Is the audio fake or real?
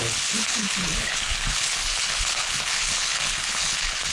fake